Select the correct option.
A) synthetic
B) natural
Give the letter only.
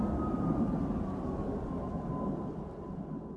B